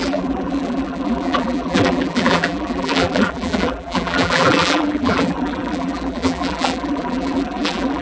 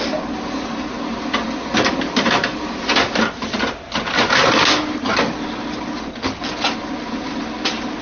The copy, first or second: first